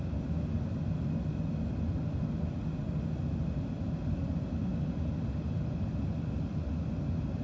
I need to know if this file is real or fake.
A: real